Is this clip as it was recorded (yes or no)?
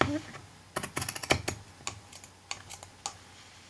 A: yes